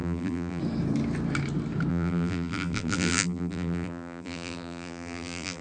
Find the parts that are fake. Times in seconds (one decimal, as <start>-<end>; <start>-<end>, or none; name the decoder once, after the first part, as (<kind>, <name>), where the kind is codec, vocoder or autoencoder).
0.0-0.6 (vocoder, BigVGAN v2); 1.9-5.6